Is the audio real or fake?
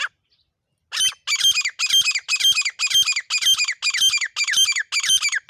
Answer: real